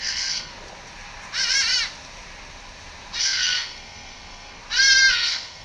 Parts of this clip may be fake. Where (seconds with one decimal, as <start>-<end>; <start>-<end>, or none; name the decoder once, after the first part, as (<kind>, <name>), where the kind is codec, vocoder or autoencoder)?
0.0-0.5 (codec, SNAC); 3.2-4.6; 5.1-5.6